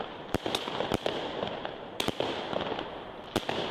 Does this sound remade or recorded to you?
recorded